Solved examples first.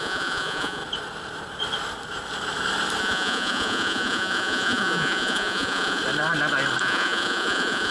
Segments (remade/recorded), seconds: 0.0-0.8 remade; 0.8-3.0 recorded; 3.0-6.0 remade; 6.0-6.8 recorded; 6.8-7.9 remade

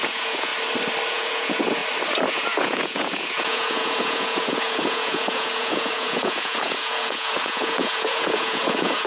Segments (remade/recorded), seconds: 0.0-0.5 remade; 0.5-1.1 recorded; 1.1-1.8 remade; 1.8-2.3 recorded; 2.3-9.1 remade

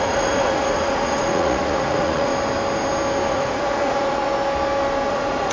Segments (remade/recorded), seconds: 0.0-2.3 remade; 2.3-3.3 recorded; 3.3-4.2 remade; 4.2-5.1 recorded; 5.1-5.5 remade

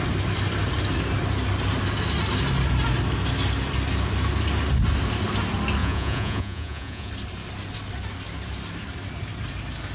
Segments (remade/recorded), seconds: 0.0-5.8 recorded; 5.8-7.1 remade; 7.1-9.9 recorded

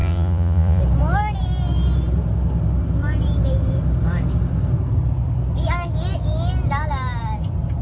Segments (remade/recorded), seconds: 0.0-0.8 remade; 0.8-7.8 recorded

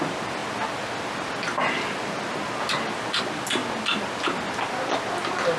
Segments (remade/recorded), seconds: 0.0-5.6 recorded